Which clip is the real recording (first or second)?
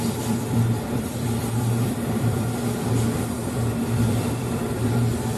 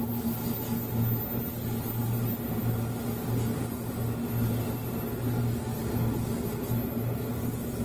second